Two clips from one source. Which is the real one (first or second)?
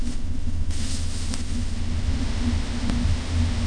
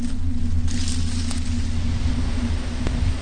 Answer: second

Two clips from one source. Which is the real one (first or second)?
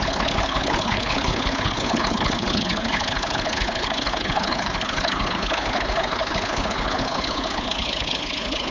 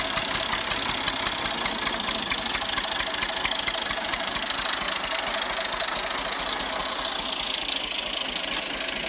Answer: second